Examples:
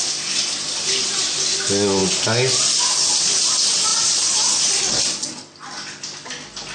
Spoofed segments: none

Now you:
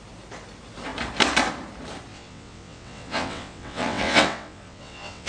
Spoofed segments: 2.1-5.3 (vocoder, WaveNeXt)

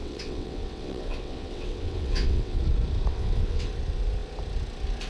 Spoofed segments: 0.0-2.6 (vocoder, WaveNeXt); 3.1-3.7

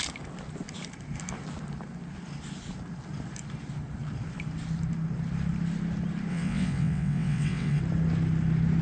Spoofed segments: 6.3-7.8 (vocoder, WaveNeXt)

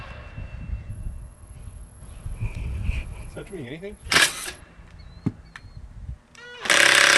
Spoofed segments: 0.9-4.6 (vocoder, WaveNeXt)

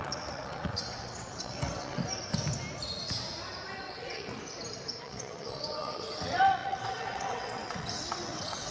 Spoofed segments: 0.0-2.0 (vocoder, WaveNeXt); 3.8-4.3; 5.0-8.7